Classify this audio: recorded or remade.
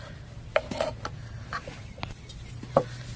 recorded